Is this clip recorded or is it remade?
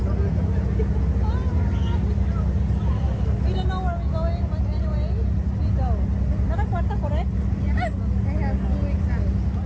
recorded